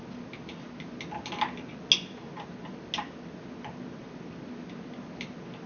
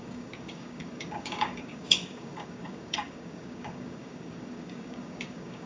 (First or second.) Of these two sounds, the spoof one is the second